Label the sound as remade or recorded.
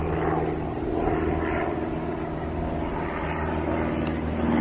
recorded